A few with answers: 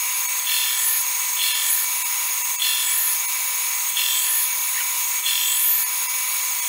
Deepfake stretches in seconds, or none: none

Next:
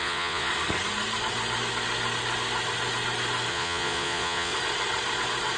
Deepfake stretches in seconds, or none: 0.0-0.5 (vocoder, Vocos); 3.5-4.5